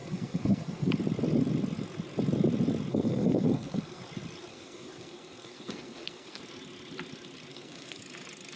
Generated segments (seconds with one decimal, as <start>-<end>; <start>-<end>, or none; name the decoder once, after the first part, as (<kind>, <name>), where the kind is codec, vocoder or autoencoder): 0.0-0.9 (codec, SNAC); 2.9-4.0; 4.5-6.4; 7.5-8.0